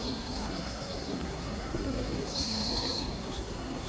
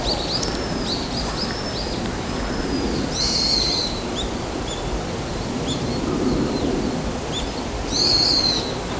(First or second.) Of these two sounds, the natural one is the second